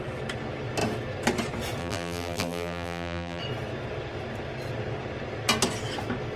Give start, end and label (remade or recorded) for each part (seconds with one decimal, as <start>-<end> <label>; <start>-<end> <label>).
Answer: 0.0-1.8 recorded; 1.8-3.4 remade; 3.4-6.4 recorded